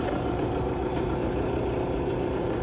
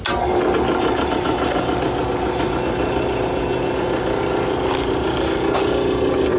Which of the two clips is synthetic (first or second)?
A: first